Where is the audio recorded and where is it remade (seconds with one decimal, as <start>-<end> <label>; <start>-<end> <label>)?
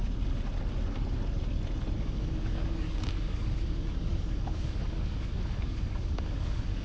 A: 0.0-2.0 recorded; 2.0-6.8 remade